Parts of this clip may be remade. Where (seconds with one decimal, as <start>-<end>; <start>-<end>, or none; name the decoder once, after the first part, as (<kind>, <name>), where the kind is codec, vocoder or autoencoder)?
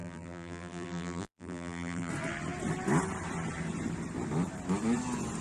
0.0-2.1 (vocoder, BigVGAN v2)